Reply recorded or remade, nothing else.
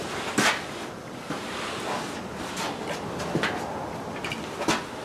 recorded